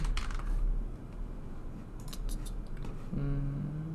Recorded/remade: recorded